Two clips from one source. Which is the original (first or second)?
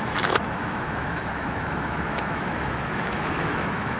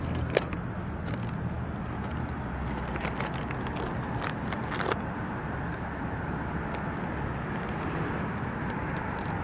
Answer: second